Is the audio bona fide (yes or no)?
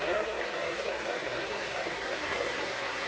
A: no